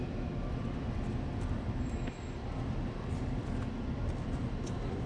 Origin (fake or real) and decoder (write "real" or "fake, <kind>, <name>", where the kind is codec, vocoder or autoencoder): fake, vocoder, BigVGAN v2